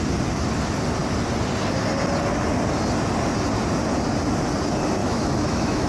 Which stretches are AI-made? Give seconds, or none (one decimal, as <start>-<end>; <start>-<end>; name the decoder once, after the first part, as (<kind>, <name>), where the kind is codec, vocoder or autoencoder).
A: 5.0-5.9 (autoencoder, DAC-VAE)